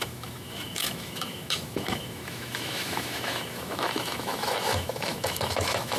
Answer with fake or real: fake